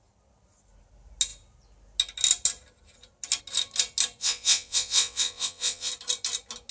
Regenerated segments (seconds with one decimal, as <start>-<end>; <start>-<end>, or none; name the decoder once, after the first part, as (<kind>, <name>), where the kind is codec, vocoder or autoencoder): 4.2-5.9 (vocoder, WaveNeXt)